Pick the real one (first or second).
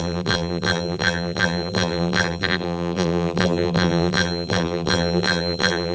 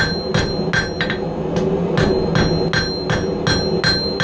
second